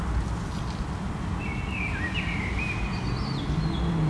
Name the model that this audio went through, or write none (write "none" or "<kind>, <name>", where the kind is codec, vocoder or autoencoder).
none